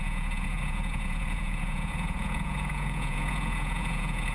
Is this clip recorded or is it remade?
remade